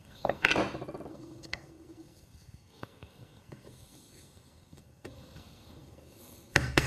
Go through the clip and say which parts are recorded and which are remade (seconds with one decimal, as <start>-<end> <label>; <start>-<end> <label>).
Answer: 0.0-0.5 remade; 0.5-1.1 recorded; 1.1-6.9 remade